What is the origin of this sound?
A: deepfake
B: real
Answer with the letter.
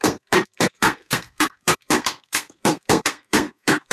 A